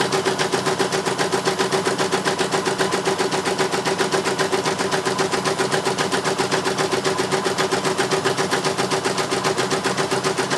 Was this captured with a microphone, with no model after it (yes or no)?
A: yes